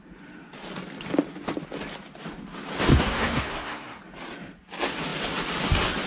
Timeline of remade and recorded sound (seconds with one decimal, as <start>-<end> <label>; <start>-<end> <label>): 0.0-2.9 recorded; 2.9-4.0 remade; 4.0-6.1 recorded